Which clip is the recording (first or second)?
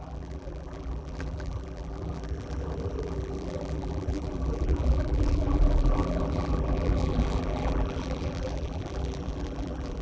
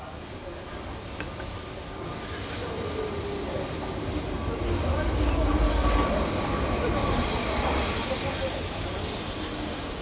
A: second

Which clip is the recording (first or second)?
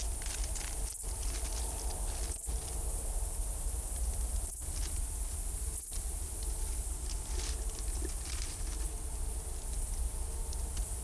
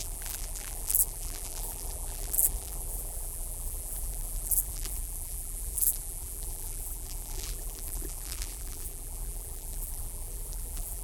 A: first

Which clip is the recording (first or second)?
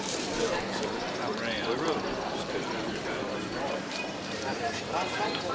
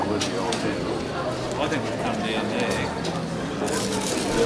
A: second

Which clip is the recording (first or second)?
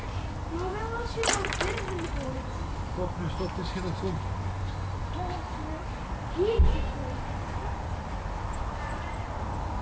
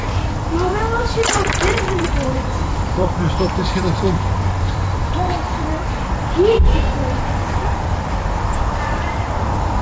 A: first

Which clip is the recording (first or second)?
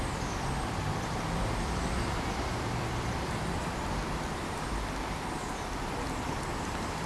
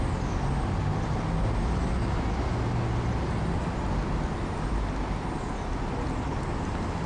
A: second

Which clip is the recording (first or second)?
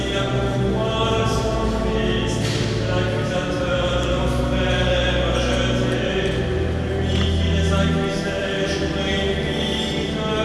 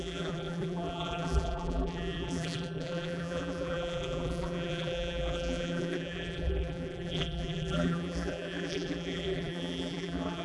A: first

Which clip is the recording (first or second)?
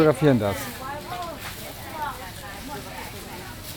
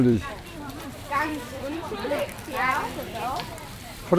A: first